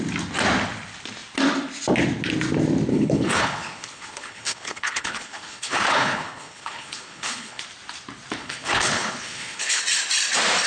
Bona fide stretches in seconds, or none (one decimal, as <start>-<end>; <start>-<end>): 0.0-2.9; 7.6-8.4; 9.8-10.7

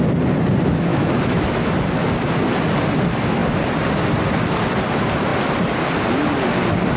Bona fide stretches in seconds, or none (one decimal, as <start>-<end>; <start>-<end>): 0.0-0.9; 1.7-7.0

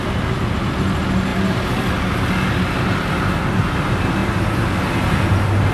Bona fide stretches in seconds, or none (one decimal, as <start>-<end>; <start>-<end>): 0.0-1.3; 1.9-4.2; 4.8-5.7

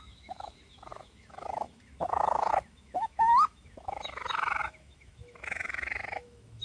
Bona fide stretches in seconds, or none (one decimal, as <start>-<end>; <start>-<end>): none

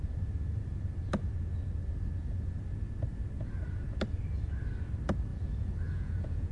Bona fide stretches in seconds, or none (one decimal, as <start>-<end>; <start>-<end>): 0.0-5.3